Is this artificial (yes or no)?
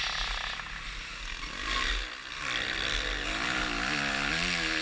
no